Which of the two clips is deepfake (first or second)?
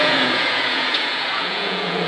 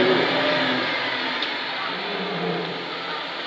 first